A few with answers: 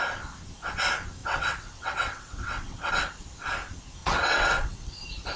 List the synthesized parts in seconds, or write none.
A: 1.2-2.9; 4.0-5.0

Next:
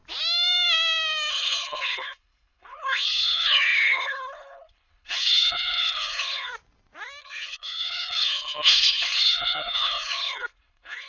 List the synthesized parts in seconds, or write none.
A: 1.3-6.5; 7.2-11.1